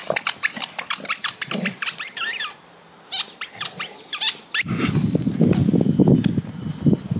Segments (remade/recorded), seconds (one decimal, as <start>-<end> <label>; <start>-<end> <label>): 0.0-5.6 remade; 5.6-6.4 recorded; 6.4-7.2 remade